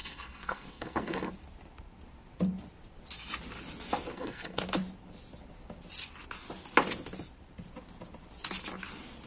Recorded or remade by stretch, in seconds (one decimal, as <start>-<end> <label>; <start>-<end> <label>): 0.0-1.3 remade; 1.3-4.1 recorded; 4.1-4.6 remade; 4.6-9.3 recorded